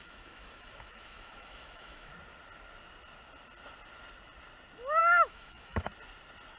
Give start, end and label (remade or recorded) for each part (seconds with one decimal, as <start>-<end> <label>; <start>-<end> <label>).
0.0-2.1 remade; 2.1-5.0 recorded; 5.0-5.9 remade; 5.9-6.6 recorded